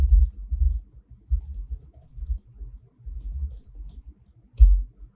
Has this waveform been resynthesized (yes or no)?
no